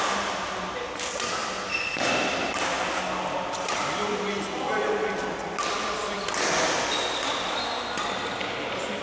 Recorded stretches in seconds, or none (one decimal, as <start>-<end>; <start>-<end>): 0.0-9.0